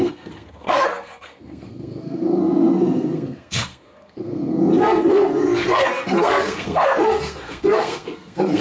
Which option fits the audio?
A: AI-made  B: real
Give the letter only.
A